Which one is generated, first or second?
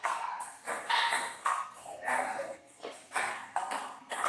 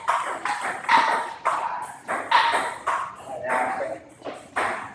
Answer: first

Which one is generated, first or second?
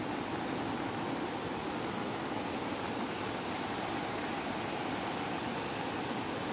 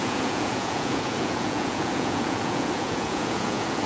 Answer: second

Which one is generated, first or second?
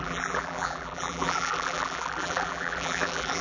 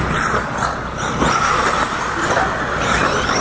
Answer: first